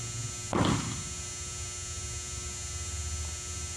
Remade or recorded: recorded